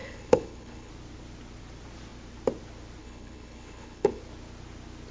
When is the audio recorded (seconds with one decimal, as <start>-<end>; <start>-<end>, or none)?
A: 0.9-3.0; 4.2-5.1